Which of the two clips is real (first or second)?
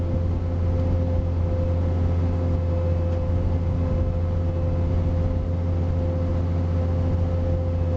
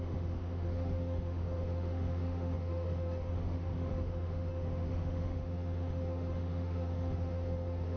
first